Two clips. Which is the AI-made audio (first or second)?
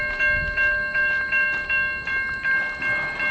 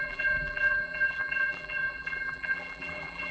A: second